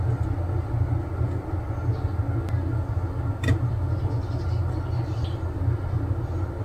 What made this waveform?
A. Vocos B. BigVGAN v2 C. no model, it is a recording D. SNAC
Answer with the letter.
C